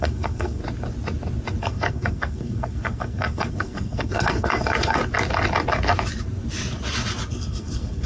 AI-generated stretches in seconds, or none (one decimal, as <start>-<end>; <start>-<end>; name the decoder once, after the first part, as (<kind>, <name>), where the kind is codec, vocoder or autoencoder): 0.0-0.6 (codec, SNAC); 1.6-5.0; 7.3-8.1

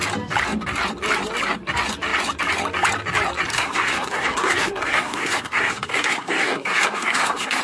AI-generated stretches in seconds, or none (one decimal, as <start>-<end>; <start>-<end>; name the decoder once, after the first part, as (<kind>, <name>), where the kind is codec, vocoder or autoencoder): 3.5-7.6 (codec, SNAC)

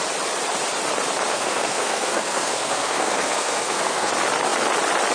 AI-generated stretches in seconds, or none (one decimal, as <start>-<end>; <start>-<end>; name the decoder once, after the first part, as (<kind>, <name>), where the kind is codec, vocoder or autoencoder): 1.3-4.1 (codec, SNAC)

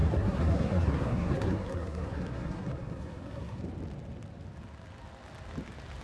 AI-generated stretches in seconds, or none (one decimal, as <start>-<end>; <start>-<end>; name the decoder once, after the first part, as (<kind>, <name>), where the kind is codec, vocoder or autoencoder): 0.0-3.6 (codec, SNAC)